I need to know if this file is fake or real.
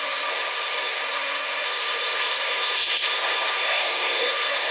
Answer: fake